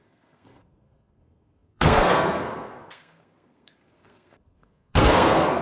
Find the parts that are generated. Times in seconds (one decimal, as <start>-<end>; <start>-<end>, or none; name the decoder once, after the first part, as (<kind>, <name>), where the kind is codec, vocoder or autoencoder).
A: 0.0-5.6 (codec, SNAC)